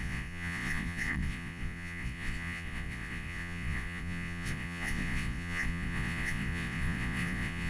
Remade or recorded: remade